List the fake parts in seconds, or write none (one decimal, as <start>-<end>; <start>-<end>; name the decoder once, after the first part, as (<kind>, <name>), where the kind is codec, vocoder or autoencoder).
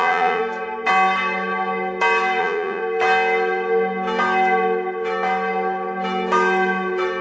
0.0-0.4 (vocoder, Vocos); 2.4-2.8